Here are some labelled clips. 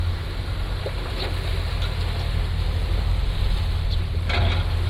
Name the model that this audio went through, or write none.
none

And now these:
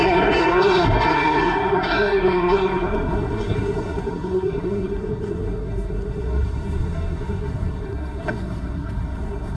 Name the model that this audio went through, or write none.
codec, SNAC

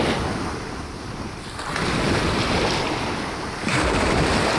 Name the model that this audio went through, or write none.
none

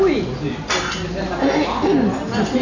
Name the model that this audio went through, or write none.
none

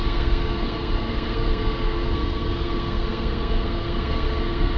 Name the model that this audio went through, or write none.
codec, SNAC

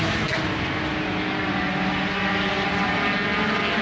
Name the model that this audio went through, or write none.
none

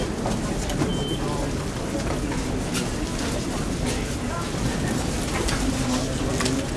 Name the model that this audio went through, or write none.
none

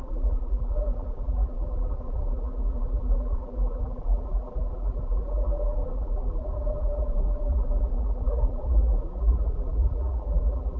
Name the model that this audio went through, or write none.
vocoder, BigVGAN v2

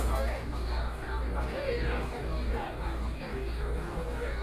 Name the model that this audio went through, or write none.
codec, DAC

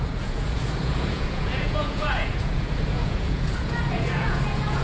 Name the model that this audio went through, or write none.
vocoder, Vocos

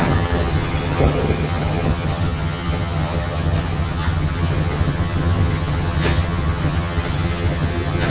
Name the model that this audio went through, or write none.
vocoder, HiFi-GAN